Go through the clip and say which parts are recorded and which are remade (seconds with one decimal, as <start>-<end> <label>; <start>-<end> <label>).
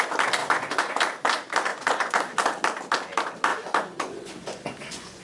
0.0-0.4 recorded; 0.4-1.0 remade; 1.0-1.7 recorded; 1.7-2.3 remade; 2.3-3.5 recorded; 3.5-5.2 remade